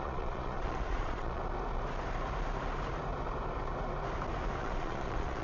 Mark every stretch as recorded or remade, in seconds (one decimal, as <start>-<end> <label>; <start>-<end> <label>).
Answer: 0.0-1.4 remade; 1.4-4.6 recorded; 4.6-5.4 remade